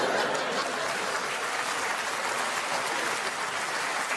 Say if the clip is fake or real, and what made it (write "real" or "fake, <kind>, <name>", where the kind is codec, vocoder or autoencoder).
real